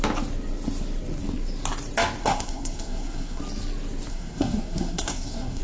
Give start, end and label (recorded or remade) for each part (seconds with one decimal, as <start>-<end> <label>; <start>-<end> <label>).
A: 0.0-2.2 recorded; 2.2-3.4 remade; 3.4-4.1 recorded; 4.1-5.6 remade